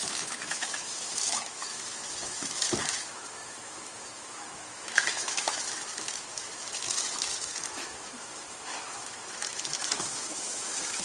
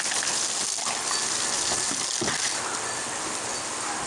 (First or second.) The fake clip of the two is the first